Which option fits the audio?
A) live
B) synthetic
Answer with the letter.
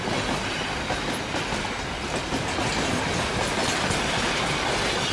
A